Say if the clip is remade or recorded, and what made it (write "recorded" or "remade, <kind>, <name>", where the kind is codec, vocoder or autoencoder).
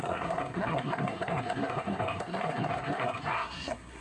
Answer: remade, codec, SNAC